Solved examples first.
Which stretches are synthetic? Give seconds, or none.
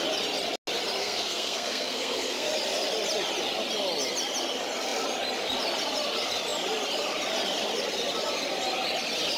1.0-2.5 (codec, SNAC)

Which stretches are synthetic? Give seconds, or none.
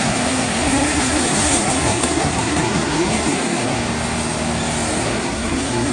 0.0-3.8 (codec, SNAC); 5.0-5.9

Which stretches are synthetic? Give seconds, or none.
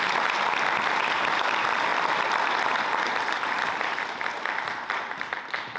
none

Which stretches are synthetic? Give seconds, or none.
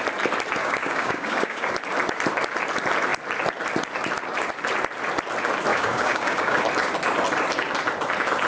0.6-1.7 (codec, DAC); 5.7-6.6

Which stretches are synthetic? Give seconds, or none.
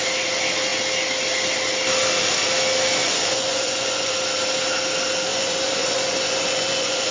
3.0-4.1 (vocoder, Vocos); 5.3-7.1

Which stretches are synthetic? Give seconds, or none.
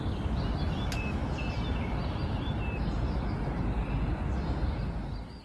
none